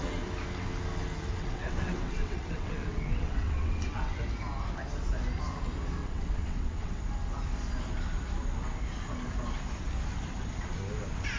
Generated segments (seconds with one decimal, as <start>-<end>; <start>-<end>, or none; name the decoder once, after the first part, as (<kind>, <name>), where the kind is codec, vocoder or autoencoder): 1.3-4.2 (vocoder, WaveNeXt); 6.0-7.0